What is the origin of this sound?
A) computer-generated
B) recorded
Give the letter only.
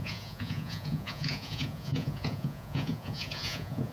A